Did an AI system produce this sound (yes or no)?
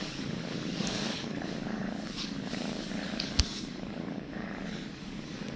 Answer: yes